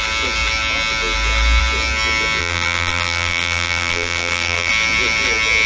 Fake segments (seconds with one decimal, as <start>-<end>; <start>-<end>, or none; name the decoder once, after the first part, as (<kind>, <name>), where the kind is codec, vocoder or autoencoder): 2.4-4.7 (vocoder, BigVGAN v2)